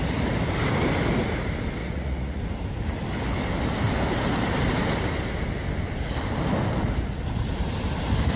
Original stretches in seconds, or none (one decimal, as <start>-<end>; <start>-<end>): 0.0-1.8; 2.4-8.4